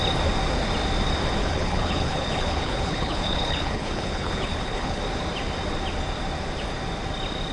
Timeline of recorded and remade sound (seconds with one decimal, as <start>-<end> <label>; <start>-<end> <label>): 0.0-1.4 recorded; 1.4-5.0 remade; 5.0-7.5 recorded